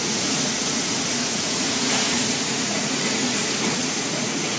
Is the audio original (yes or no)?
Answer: no